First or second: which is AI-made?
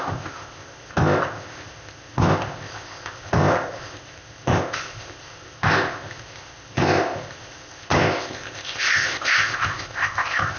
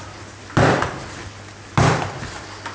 first